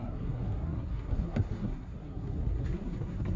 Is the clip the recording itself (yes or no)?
no